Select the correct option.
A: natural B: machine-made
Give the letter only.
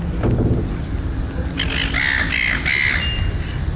A